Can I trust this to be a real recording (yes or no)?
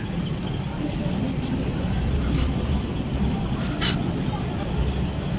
yes